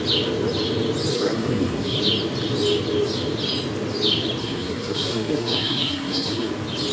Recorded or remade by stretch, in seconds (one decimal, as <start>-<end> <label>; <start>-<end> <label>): 0.0-1.1 recorded; 1.1-2.0 remade; 2.0-4.4 recorded; 4.4-6.5 remade; 6.5-6.9 recorded